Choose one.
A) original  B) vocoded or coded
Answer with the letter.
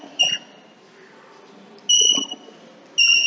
A